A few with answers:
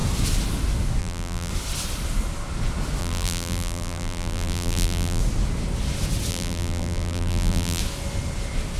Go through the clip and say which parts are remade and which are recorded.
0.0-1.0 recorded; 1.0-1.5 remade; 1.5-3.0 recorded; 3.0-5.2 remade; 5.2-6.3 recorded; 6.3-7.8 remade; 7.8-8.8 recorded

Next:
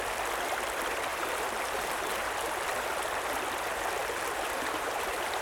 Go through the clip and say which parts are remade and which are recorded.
0.0-1.1 recorded; 1.1-3.0 remade; 3.0-4.0 recorded; 4.0-5.4 remade